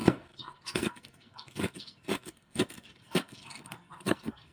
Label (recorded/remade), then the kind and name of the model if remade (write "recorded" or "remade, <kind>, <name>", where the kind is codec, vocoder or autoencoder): remade, codec, SNAC